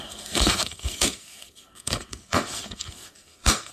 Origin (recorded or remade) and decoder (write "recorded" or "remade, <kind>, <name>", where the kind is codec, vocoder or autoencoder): remade, codec, SNAC